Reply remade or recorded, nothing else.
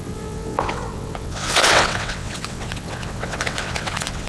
remade